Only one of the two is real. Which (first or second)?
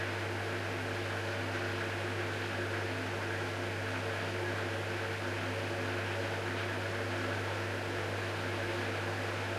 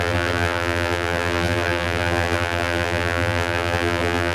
first